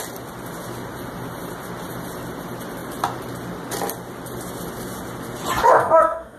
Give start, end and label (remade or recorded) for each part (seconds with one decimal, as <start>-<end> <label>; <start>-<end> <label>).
0.0-5.7 recorded; 5.7-6.4 remade